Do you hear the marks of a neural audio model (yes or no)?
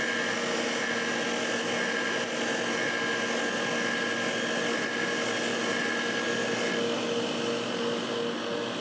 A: no